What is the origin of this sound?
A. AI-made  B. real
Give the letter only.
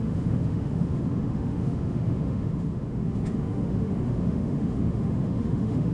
A